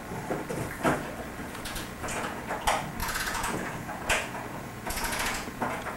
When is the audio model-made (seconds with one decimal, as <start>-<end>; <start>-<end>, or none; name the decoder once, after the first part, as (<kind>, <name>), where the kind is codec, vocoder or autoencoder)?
1.4-2.4 (vocoder, Vocos); 3.0-6.0